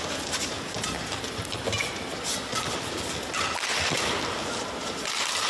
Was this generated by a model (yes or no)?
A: no